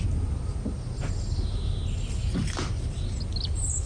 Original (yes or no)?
yes